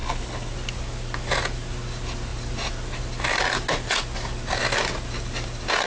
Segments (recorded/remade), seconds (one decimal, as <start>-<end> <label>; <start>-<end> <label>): 0.0-0.5 remade; 0.5-5.9 recorded